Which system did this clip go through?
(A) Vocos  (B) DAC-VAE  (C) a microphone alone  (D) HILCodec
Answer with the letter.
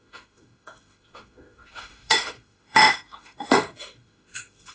B